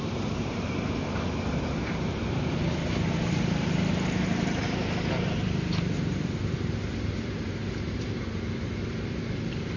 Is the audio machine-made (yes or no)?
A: yes